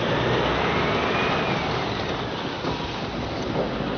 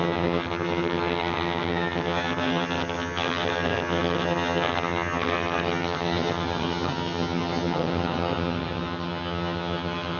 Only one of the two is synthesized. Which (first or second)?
second